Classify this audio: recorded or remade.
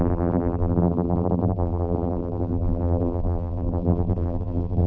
remade